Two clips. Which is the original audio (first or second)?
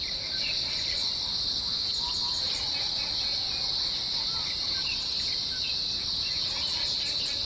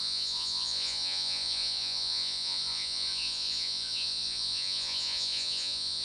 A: first